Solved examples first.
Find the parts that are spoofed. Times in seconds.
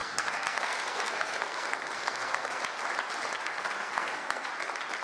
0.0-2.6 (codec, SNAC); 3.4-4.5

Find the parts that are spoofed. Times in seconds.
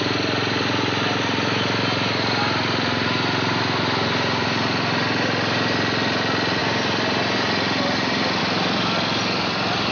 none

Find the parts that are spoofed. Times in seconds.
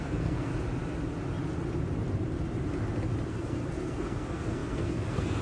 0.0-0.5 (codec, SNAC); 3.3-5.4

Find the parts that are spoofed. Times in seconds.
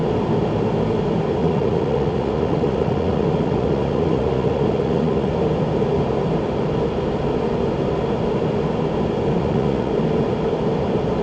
1.4-5.3 (vocoder, Vocos); 9.4-9.9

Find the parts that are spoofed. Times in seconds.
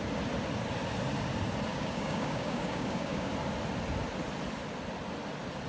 1.7-3.3 (codec, DAC)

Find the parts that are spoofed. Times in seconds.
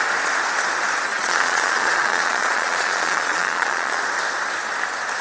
1.1-4.0 (vocoder, Vocos)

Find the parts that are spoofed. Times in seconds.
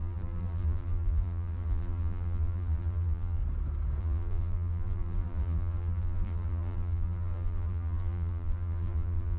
0.0-3.4 (vocoder, BigVGAN v2); 4.0-9.4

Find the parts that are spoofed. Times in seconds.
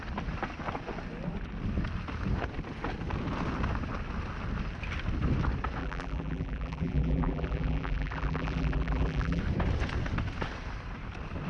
5.8-9.4 (vocoder, BigVGAN v2)